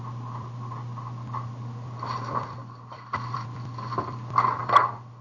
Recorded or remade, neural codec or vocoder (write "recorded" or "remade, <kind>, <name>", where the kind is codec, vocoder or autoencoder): recorded